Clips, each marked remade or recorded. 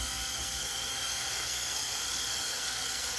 remade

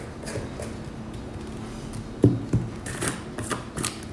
recorded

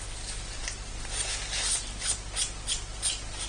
recorded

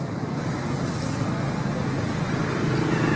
recorded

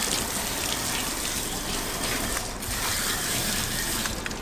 recorded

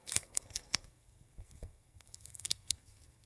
remade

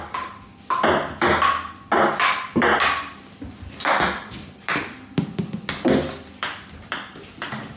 recorded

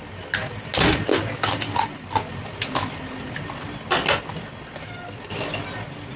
recorded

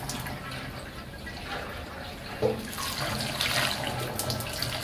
recorded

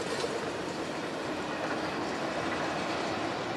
recorded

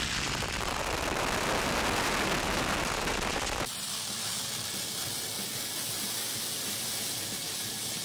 recorded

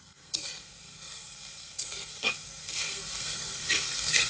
remade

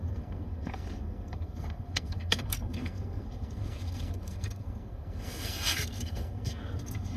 remade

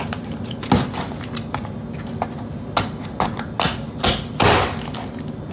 recorded